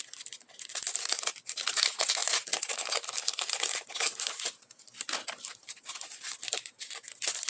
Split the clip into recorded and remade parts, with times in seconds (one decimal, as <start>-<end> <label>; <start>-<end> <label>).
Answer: 0.0-7.5 recorded